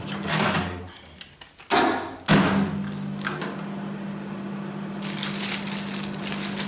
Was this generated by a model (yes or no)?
no